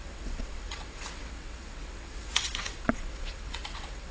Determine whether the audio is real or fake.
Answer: fake